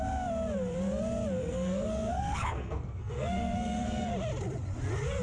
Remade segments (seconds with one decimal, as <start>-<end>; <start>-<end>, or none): 1.4-4.1